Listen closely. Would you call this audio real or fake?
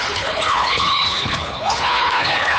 fake